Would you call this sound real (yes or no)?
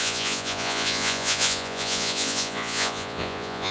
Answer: no